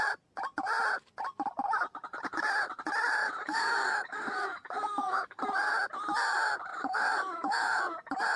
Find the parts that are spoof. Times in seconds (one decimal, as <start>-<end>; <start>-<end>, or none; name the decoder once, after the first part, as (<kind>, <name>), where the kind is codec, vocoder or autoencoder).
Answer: 3.2-5.4 (codec, DAC); 6.7-7.8